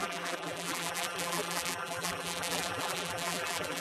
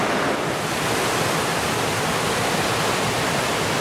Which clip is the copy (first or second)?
first